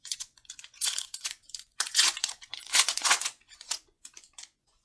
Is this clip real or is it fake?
fake